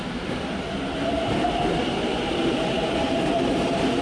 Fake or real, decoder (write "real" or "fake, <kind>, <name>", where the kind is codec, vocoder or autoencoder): fake, vocoder, BigVGAN v2